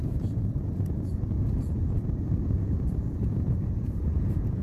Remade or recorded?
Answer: remade